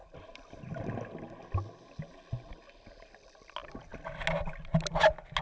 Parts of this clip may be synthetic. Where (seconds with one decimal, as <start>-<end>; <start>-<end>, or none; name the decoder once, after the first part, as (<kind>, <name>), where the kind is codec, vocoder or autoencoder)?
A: none